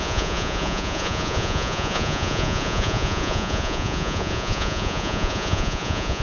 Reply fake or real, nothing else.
fake